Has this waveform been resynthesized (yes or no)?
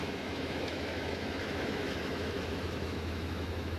yes